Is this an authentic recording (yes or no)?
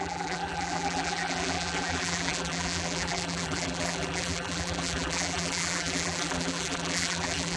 no